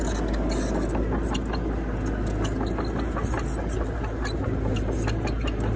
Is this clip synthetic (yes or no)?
no